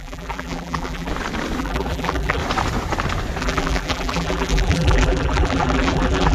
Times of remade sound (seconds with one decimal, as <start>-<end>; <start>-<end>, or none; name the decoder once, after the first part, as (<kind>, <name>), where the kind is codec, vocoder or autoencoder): 0.0-1.1 (vocoder, BigVGAN v2); 1.6-2.4; 3.4-6.3